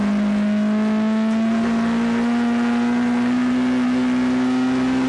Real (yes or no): yes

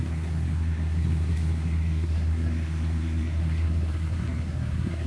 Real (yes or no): no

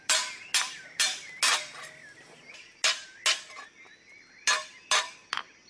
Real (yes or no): yes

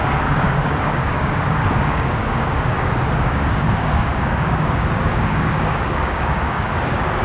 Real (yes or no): no